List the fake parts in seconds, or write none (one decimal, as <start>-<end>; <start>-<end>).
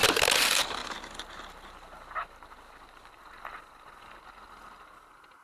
none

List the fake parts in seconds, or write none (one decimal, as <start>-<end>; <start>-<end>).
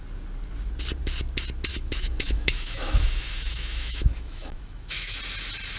1.7-5.2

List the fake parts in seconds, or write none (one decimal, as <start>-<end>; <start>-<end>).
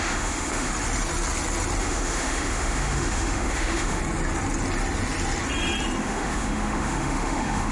0.0-0.7; 1.8-4.0; 6.0-7.7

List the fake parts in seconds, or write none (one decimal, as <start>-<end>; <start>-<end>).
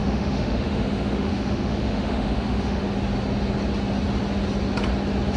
0.0-2.8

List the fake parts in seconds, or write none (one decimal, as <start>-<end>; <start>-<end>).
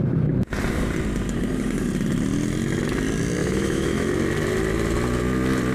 3.4-4.1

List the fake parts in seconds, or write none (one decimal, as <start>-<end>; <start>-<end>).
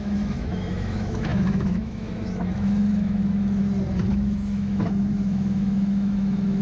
0.0-3.6; 4.1-6.6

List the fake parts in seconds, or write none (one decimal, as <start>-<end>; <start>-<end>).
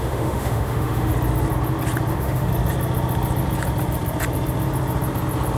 0.0-1.1; 2.1-2.5